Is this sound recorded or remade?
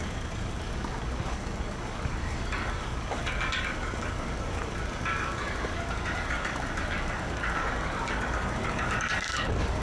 remade